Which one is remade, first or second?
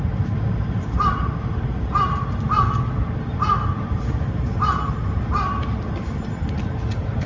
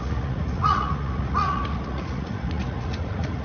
second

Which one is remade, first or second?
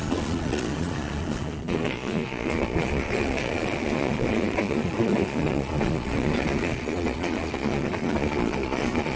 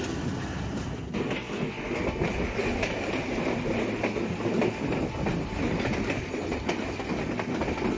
first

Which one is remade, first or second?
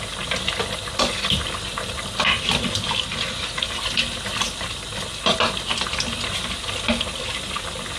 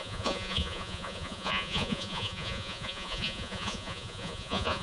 second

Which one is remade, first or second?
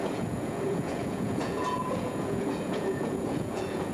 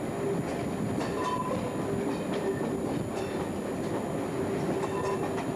first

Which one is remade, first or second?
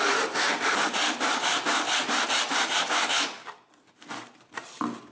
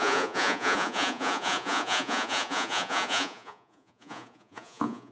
second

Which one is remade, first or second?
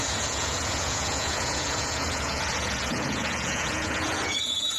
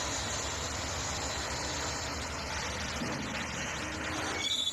first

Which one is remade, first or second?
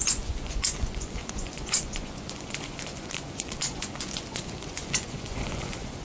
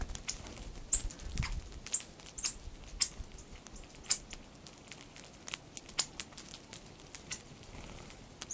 first